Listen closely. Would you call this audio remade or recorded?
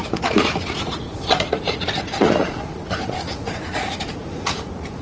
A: remade